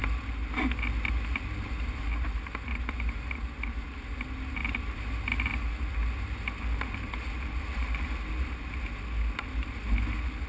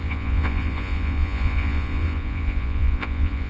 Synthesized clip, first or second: second